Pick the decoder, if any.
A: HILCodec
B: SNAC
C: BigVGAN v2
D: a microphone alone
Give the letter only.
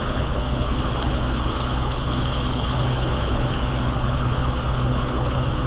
A